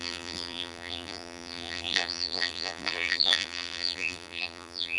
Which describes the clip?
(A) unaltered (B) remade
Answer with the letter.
B